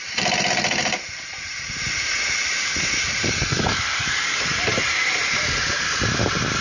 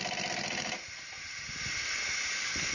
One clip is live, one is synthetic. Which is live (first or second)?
second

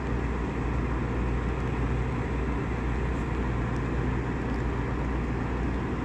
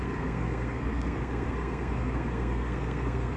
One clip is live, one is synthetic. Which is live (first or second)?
first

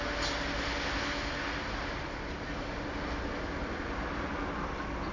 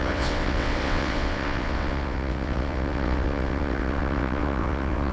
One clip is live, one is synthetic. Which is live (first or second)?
first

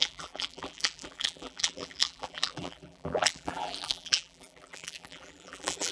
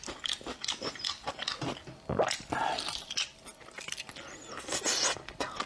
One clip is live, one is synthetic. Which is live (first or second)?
second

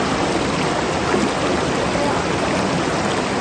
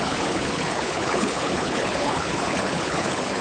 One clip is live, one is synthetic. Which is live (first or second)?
first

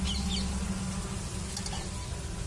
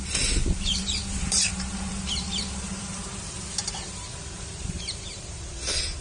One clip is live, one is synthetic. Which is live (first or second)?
first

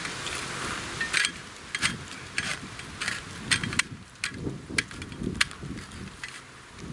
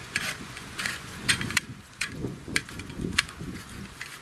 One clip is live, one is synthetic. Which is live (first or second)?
first